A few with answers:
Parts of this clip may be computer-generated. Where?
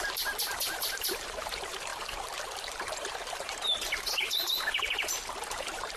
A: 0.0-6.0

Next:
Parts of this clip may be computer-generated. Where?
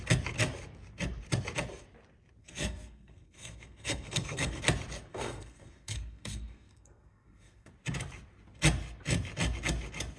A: 2.4-4.6; 5.1-7.7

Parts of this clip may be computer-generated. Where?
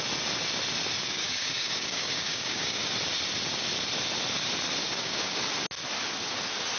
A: 1.0-2.8; 4.8-5.4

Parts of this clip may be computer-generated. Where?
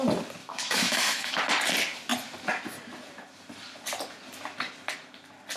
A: 0.4-1.4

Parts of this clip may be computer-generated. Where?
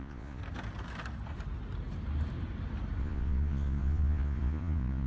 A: 0.0-0.4; 3.0-5.1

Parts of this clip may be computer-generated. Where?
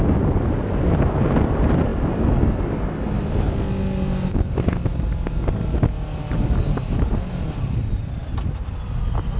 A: none